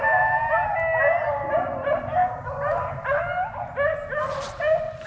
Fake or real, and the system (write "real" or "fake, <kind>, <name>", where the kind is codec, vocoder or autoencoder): real